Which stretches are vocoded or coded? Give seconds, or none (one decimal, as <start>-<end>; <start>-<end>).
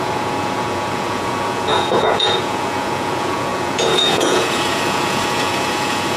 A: 0.0-6.2